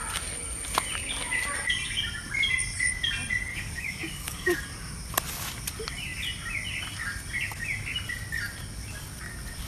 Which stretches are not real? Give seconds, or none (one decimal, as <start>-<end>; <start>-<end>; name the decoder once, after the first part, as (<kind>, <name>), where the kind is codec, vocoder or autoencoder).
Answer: 3.5-4.6 (codec, DAC)